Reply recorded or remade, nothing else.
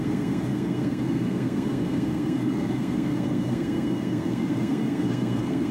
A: remade